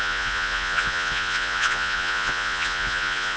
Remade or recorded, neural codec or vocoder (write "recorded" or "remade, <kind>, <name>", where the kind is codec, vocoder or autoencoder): remade, vocoder, Vocos